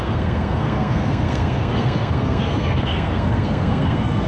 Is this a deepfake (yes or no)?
yes